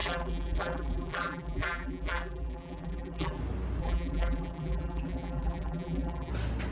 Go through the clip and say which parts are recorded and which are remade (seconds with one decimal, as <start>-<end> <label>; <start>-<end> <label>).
0.0-3.4 remade; 3.4-3.8 recorded; 3.8-6.3 remade; 6.3-6.7 recorded